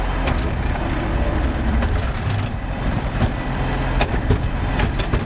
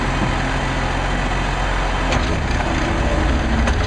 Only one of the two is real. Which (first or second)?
second